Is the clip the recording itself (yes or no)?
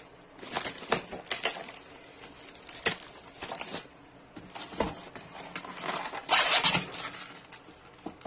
yes